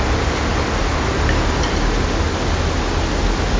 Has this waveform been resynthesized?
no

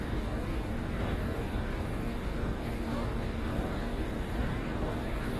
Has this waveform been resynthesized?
yes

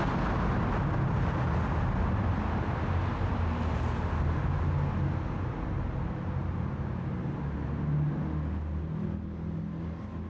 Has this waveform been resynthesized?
no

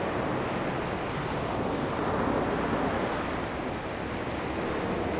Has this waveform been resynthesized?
no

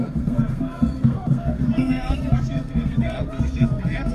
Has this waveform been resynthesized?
yes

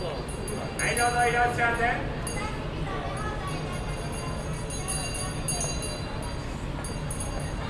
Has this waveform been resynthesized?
no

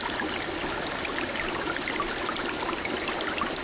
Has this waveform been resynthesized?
no